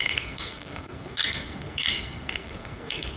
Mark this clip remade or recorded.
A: remade